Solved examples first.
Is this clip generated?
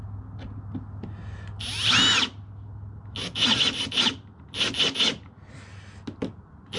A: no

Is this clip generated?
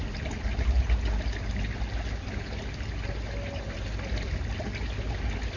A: no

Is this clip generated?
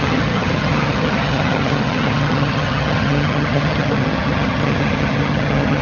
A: yes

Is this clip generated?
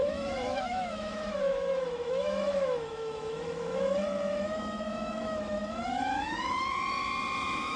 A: yes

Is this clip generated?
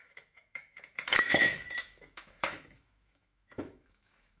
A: yes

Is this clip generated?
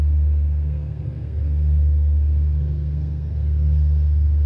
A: yes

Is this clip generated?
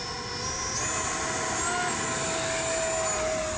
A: no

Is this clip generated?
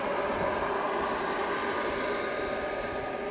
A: no